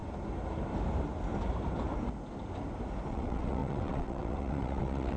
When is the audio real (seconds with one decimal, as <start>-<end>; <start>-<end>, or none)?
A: 0.0-3.1